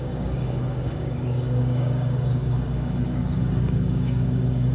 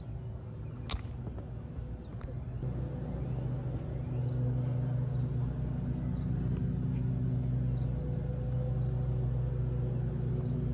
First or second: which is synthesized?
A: first